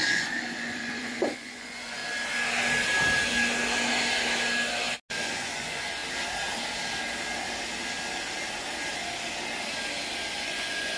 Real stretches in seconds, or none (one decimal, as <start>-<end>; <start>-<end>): 2.0-5.1; 6.0-10.3